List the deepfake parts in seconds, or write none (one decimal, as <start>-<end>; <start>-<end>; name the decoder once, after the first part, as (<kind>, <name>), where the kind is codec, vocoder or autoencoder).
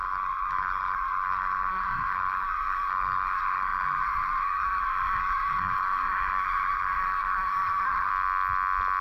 0.0-8.1 (codec, SNAC)